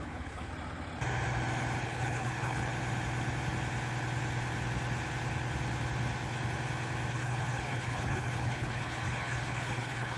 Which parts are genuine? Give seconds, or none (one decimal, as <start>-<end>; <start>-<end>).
0.5-1.8; 2.7-7.1